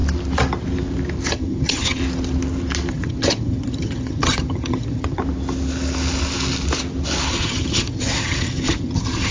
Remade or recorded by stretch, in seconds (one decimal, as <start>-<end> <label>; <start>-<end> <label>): 0.0-1.3 recorded; 1.3-2.0 remade; 2.0-2.9 recorded; 2.9-5.2 remade; 5.2-7.3 recorded; 7.3-9.3 remade